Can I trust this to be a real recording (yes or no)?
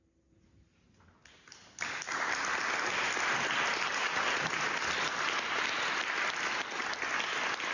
yes